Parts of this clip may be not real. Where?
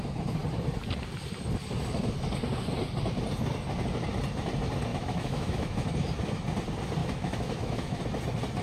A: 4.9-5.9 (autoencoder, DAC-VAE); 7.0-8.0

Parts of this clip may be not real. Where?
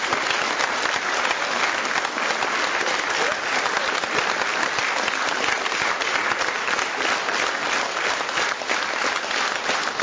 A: none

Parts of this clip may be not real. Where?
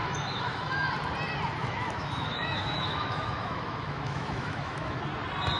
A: 0.0-0.9 (autoencoder, DAC-VAE); 1.6-5.0